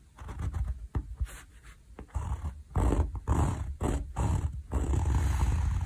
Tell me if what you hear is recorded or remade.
recorded